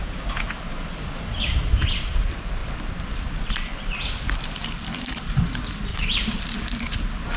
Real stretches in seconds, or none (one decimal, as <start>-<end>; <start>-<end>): 0.0-2.6; 5.5-5.9; 6.4-7.4